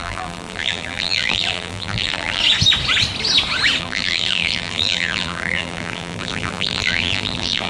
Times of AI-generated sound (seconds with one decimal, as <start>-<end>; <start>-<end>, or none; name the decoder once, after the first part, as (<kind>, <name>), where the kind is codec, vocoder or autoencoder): 0.0-2.4 (vocoder, BigVGAN v2); 3.8-7.7